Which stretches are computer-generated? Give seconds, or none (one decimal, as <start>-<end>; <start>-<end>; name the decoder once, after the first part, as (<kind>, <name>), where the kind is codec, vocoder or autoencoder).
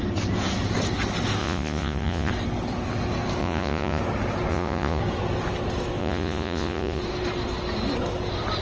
1.4-2.3 (vocoder, Vocos); 3.4-4.0; 4.5-5.0; 6.0-7.0